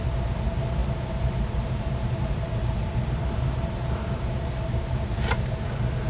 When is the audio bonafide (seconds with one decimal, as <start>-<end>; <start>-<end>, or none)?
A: none